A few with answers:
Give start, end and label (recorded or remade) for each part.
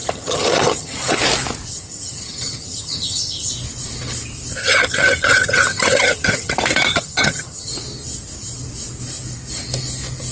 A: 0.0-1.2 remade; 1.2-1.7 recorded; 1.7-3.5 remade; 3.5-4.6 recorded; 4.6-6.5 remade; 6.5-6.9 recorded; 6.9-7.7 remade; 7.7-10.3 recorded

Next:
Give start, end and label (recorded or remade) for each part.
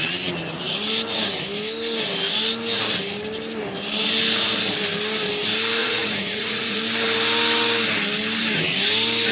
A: 0.0-5.8 recorded; 5.8-6.8 remade; 6.8-9.3 recorded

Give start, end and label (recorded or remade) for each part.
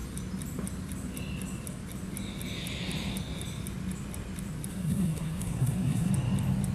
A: 0.0-4.7 recorded; 4.7-6.1 remade; 6.1-6.7 recorded